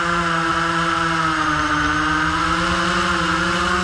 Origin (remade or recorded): recorded